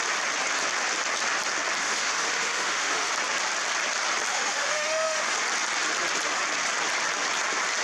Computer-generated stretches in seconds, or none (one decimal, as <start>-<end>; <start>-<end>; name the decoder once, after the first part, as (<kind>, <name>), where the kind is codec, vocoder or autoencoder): 1.8-3.1 (autoencoder, DAC-VAE); 4.3-5.3